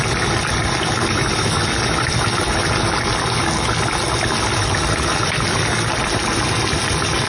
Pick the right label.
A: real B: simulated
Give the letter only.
A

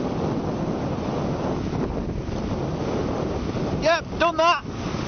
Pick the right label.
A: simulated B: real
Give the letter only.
B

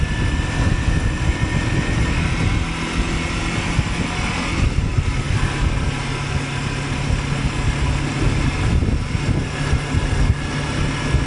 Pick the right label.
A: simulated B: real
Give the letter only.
B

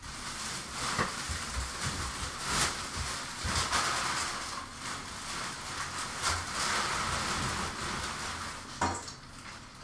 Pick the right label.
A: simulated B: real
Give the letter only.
B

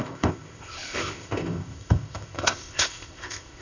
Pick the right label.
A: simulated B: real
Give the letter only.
A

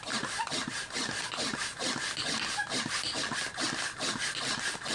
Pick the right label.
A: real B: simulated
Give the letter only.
A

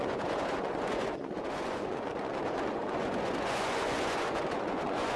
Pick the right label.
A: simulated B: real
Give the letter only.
A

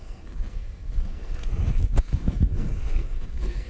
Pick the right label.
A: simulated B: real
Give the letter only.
A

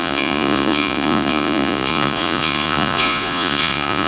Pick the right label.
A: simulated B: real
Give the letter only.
A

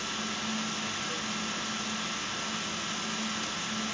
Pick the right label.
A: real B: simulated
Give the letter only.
A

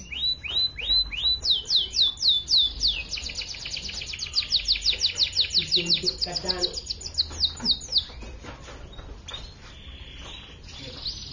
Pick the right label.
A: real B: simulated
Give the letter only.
A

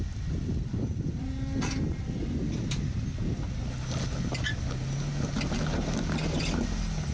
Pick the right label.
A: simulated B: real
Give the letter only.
B